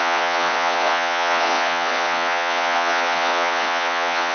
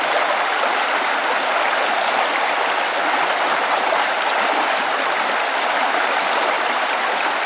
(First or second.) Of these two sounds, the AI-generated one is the first